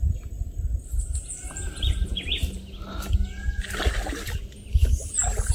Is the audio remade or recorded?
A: recorded